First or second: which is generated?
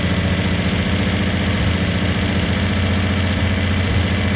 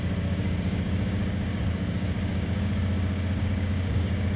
second